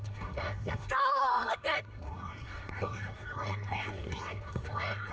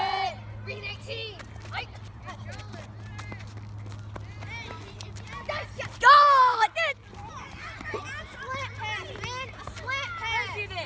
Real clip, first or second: second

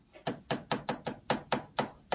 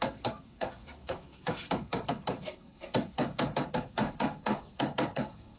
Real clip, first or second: first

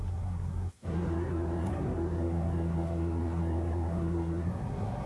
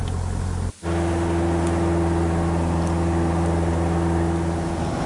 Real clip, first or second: second